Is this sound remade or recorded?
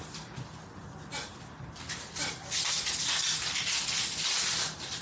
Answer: recorded